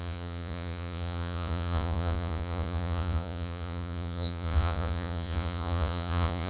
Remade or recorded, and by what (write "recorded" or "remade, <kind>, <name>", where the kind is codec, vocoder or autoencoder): remade, vocoder, Vocos